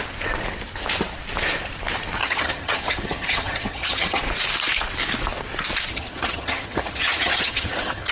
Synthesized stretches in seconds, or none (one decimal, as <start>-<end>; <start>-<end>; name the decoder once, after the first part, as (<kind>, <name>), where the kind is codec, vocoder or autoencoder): 2.2-4.2 (vocoder, HiFi-GAN); 5.9-8.1